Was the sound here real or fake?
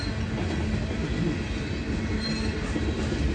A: real